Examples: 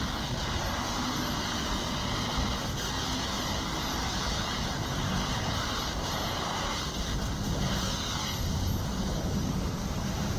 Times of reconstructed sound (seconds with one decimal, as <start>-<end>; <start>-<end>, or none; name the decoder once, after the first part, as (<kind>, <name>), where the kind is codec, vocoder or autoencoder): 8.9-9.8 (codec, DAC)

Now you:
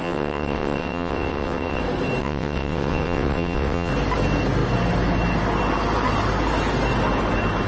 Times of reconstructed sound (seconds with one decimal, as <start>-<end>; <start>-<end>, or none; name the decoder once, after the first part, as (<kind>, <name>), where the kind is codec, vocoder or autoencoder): 0.0-1.8 (vocoder, WaveNeXt); 2.2-3.9

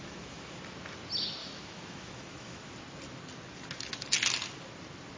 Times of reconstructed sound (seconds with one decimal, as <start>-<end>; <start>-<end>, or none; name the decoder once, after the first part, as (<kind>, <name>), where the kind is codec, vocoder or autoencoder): 0.0-0.6 (autoencoder, DAC-VAE); 1.4-2.7